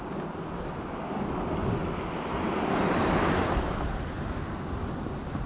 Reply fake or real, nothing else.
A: real